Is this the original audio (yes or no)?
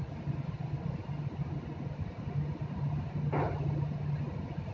yes